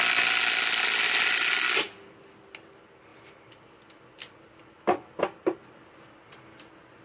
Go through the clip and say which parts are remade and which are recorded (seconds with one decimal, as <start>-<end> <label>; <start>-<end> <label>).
0.0-7.0 recorded